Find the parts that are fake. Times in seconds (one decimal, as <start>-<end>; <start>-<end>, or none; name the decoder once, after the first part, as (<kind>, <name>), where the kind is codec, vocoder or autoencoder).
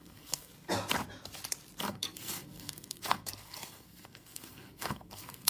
0.0-0.5 (codec, SNAC); 1.8-5.5